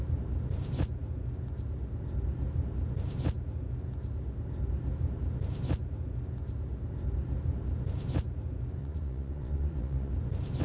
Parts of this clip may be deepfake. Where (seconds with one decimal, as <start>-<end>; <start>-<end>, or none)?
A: 8.8-10.1

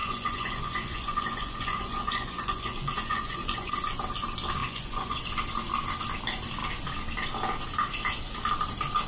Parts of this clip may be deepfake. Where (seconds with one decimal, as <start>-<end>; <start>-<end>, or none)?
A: 0.0-3.7; 4.6-5.2

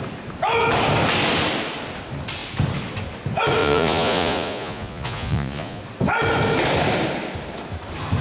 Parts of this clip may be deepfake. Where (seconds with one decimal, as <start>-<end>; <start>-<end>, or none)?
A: 3.6-5.8